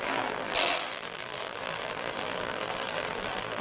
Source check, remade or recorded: remade